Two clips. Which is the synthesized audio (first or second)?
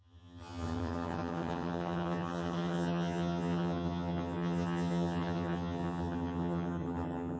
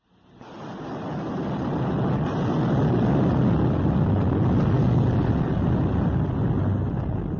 first